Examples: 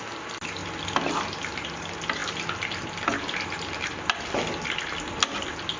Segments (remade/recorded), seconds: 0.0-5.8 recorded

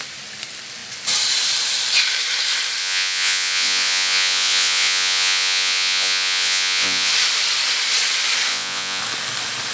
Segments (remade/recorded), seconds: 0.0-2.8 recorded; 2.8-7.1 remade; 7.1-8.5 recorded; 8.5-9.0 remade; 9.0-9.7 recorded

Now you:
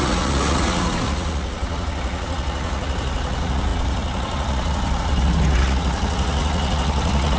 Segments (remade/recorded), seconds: 0.0-7.4 remade

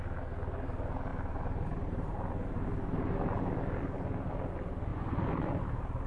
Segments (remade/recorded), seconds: 0.0-4.9 recorded; 4.9-5.6 remade; 5.6-6.1 recorded